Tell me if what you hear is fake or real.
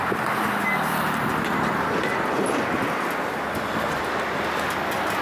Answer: real